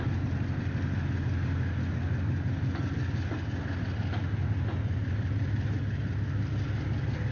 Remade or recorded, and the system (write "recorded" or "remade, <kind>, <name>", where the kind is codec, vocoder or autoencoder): recorded